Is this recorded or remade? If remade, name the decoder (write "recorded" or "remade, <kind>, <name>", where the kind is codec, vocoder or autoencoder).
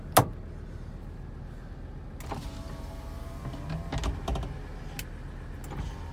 recorded